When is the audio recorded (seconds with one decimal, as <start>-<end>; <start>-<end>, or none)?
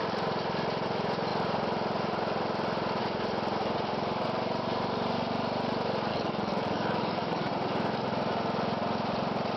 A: 0.0-6.1; 7.5-9.6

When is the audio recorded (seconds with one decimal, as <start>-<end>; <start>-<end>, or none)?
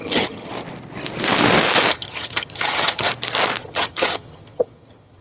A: 0.5-1.9; 3.1-3.6